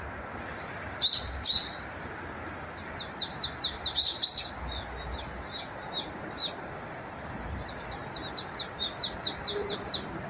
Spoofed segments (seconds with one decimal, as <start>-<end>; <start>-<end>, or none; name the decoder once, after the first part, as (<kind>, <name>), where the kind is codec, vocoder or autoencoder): none